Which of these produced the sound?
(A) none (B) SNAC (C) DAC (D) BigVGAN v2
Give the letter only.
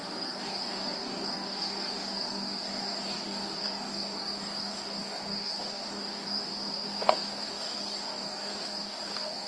C